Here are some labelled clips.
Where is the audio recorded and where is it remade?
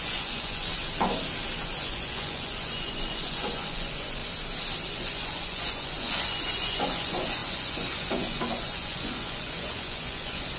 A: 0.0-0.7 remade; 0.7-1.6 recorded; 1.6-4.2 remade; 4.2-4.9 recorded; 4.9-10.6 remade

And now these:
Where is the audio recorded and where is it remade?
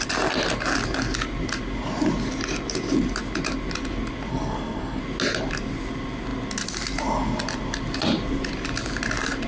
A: 0.0-4.3 recorded; 4.3-5.0 remade; 5.0-9.5 recorded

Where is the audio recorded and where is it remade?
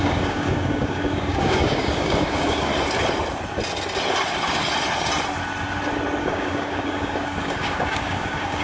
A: 0.0-2.7 remade; 2.7-6.2 recorded; 6.2-8.6 remade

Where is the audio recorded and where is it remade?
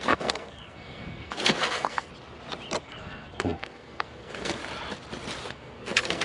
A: 0.0-2.1 remade; 2.1-2.8 recorded; 2.8-4.6 remade; 4.6-5.5 recorded; 5.5-6.2 remade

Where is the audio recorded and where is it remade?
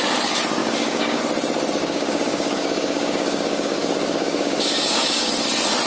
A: 0.0-0.6 recorded; 0.6-1.2 remade; 1.2-1.8 recorded; 1.8-5.3 remade; 5.3-5.9 recorded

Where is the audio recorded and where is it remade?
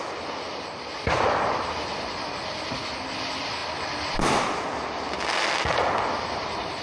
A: 0.0-6.8 recorded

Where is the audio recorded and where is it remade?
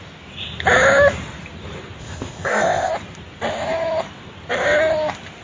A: 0.0-2.0 recorded; 2.0-2.9 remade; 2.9-5.4 recorded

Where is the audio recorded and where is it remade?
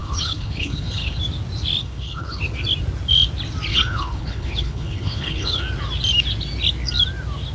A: 0.0-1.2 remade; 1.2-1.8 recorded; 1.8-2.4 remade; 2.4-3.7 recorded; 3.7-5.6 remade; 5.6-7.5 recorded